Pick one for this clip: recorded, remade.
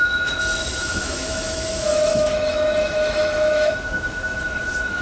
remade